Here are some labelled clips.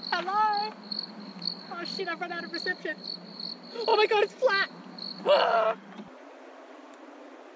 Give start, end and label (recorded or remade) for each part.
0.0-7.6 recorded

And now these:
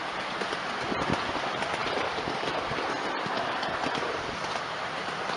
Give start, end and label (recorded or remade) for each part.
0.0-5.4 recorded

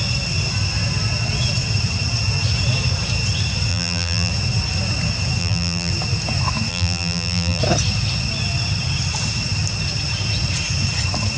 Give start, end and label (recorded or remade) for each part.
0.0-3.7 recorded; 3.7-4.3 remade; 4.3-5.4 recorded; 5.4-5.9 remade; 5.9-6.7 recorded; 6.7-7.6 remade; 7.6-11.4 recorded

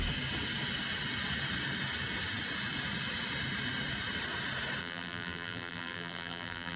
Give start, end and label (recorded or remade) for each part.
0.0-4.8 recorded; 4.8-6.8 remade

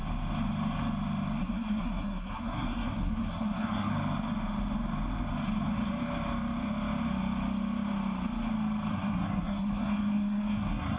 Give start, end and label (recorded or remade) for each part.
0.0-1.4 recorded; 1.4-3.9 remade; 3.9-8.9 recorded; 8.9-11.0 remade

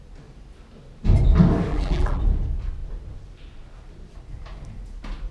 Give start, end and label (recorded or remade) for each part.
0.0-1.7 recorded; 1.7-2.2 remade; 2.2-5.3 recorded